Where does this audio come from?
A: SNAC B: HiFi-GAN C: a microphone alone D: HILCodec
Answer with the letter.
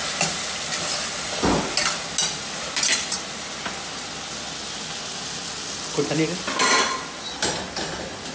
C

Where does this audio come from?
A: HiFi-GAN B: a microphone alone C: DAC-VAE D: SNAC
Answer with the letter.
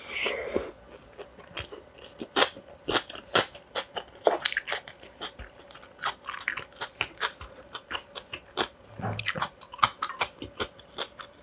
B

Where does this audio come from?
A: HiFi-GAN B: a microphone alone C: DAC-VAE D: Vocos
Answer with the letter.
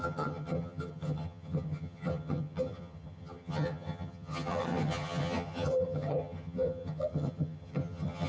A